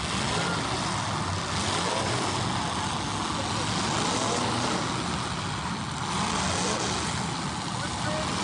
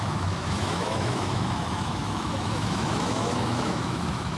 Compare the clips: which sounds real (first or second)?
first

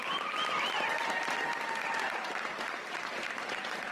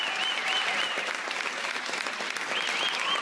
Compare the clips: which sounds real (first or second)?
second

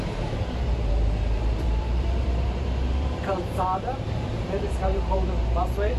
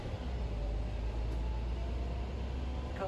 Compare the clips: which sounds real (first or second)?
second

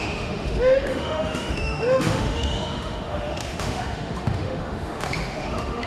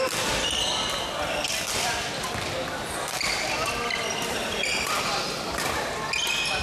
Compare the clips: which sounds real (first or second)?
second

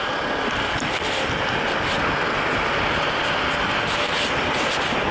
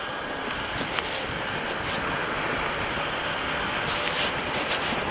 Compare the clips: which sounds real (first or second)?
first